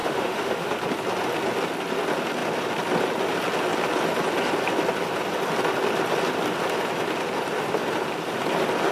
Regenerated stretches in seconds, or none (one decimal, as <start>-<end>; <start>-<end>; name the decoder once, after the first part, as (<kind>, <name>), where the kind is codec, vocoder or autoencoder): 0.0-0.7 (autoencoder, DAC-VAE)